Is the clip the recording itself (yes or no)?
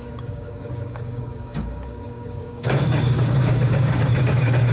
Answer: no